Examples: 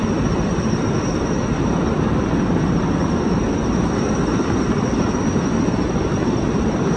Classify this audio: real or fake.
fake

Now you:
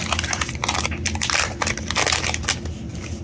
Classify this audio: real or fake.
real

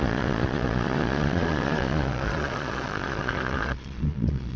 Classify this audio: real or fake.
fake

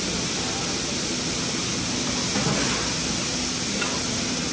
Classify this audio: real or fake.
real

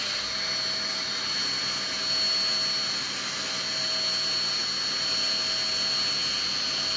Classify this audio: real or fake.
real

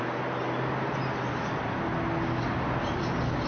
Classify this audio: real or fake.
real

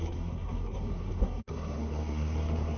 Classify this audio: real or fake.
fake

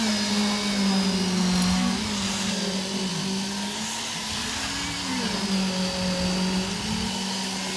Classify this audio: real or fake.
real